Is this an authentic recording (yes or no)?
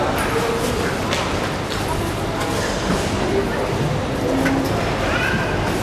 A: yes